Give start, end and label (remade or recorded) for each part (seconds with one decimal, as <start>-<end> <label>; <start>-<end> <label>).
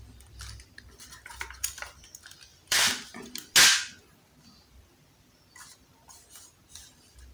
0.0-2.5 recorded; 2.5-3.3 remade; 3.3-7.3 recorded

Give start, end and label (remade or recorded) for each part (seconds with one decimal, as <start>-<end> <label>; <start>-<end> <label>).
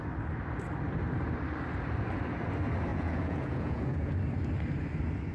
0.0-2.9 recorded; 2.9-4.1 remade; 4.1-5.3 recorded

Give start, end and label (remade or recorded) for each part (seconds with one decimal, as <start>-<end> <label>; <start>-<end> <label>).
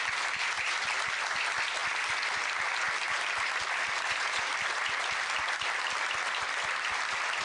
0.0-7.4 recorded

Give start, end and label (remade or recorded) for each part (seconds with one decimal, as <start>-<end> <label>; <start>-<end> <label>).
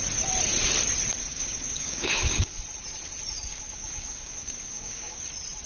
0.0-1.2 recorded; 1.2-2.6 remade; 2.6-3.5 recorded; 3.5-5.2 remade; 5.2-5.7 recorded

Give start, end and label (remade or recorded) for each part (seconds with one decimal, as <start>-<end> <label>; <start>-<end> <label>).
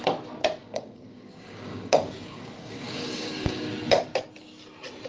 0.0-0.6 recorded; 0.6-3.7 remade; 3.7-5.1 recorded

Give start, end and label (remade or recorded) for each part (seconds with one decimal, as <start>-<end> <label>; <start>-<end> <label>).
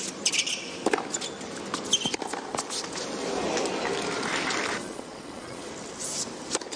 0.0-4.8 recorded; 4.8-5.7 remade; 5.7-6.8 recorded